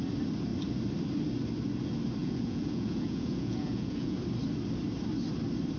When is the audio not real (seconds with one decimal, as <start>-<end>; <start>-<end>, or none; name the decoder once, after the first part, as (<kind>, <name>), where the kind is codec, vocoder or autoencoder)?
2.2-4.2 (vocoder, Vocos)